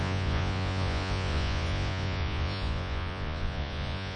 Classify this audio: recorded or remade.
remade